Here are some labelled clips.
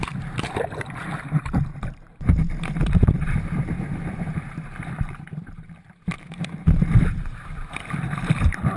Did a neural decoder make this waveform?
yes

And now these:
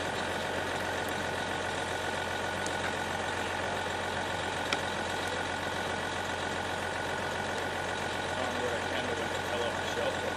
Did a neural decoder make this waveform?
no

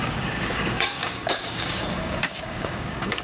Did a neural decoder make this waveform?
yes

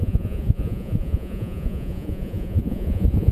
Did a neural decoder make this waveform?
yes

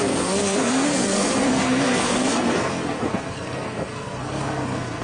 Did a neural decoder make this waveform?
yes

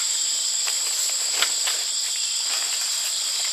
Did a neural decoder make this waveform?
no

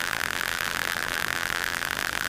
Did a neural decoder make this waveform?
yes